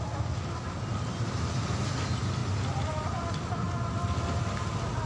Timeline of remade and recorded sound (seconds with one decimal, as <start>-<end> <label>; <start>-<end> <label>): 0.0-5.1 recorded